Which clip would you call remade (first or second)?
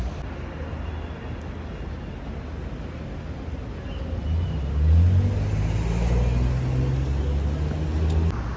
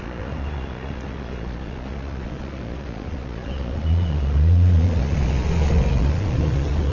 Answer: second